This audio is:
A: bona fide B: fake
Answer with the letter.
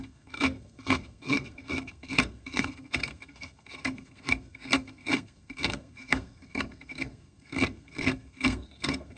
B